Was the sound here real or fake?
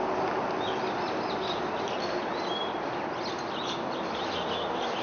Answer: real